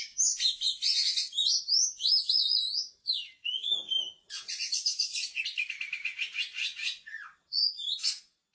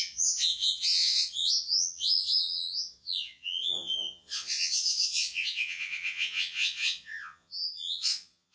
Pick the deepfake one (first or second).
second